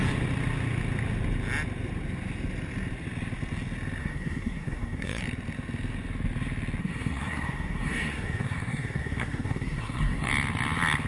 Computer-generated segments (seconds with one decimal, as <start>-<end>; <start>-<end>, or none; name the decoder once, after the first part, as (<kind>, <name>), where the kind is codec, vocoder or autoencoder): 4.0-5.2 (codec, SNAC); 6.8-10.3